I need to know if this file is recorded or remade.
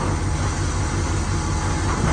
recorded